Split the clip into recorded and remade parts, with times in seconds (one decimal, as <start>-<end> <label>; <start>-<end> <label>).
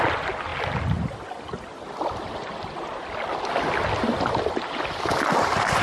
0.0-5.8 recorded